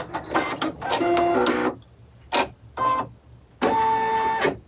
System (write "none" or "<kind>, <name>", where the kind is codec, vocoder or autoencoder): none